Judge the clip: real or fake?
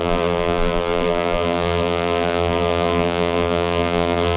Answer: fake